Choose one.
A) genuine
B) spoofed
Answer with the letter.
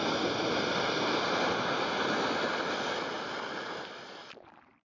B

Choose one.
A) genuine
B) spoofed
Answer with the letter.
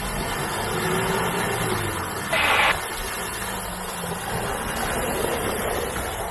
A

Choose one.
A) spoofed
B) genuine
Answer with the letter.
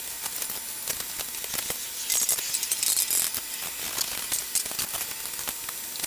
B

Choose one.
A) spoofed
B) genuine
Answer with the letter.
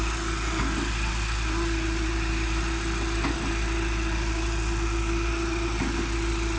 B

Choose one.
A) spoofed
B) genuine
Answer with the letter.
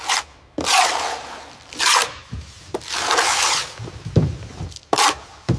A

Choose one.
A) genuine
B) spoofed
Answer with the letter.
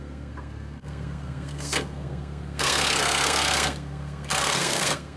B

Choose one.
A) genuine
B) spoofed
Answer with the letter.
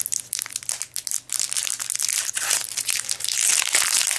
A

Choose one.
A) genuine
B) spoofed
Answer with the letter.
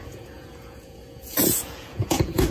B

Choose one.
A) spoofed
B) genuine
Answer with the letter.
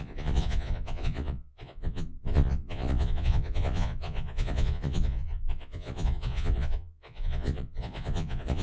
A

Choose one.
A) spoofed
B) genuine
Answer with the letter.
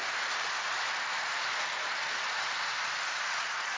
B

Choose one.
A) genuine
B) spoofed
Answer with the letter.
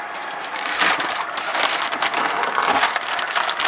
A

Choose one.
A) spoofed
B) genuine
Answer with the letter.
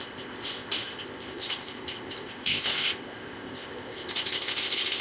A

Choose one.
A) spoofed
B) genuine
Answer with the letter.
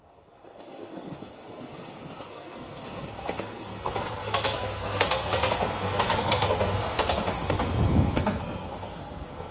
A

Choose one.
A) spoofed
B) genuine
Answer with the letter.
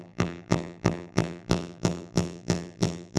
A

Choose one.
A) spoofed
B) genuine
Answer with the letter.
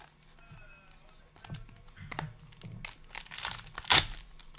B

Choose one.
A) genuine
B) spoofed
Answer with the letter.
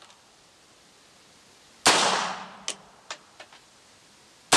A